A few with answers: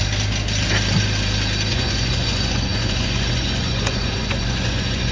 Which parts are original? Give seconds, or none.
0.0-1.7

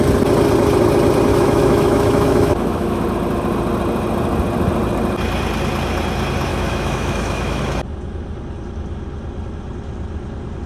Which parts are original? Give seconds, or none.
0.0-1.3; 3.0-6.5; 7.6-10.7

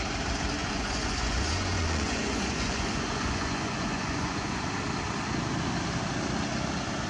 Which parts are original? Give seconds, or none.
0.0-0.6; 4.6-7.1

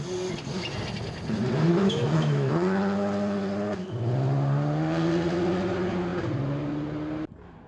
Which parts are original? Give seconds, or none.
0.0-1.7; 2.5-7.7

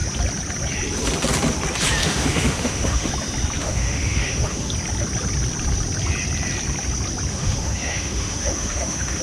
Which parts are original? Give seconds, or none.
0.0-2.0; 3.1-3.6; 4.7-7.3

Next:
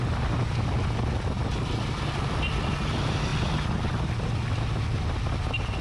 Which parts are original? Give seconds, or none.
0.0-5.8